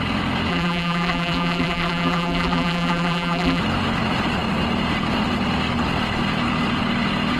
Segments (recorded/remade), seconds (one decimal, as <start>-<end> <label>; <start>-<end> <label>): 0.0-0.5 recorded; 0.5-3.6 remade; 3.6-7.4 recorded